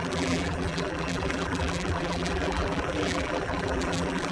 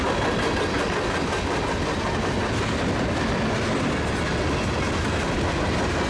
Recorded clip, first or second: second